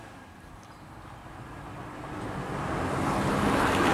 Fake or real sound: real